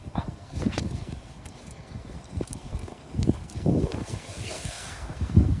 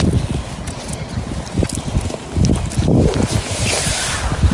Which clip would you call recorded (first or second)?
second